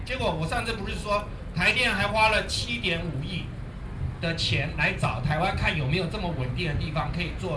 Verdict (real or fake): real